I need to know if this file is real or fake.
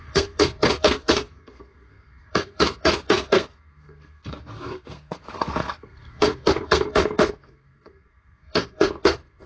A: fake